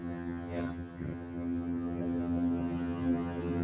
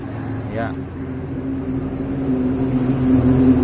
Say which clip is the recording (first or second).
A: second